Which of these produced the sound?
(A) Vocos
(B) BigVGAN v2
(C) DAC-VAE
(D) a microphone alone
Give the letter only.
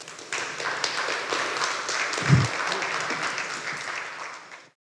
D